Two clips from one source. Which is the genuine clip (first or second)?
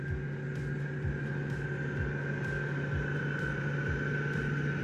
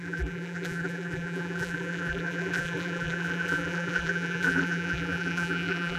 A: first